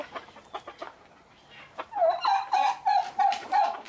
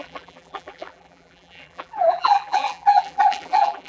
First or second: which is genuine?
first